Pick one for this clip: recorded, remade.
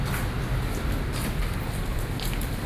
recorded